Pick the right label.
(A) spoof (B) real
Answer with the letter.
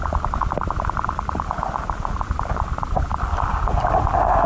B